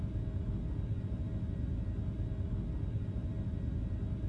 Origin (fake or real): real